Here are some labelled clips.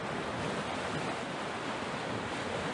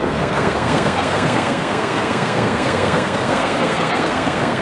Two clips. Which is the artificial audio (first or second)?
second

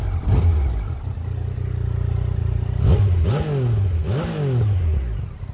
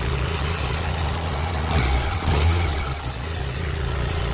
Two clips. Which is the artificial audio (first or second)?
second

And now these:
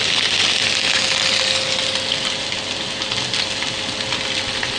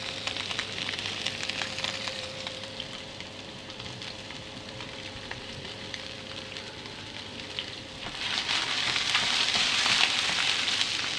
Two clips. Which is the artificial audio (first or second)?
second